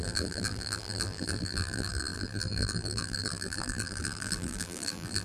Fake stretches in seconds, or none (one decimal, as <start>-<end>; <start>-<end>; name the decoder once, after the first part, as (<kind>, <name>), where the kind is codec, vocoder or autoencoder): 0.0-5.2 (vocoder, BigVGAN v2)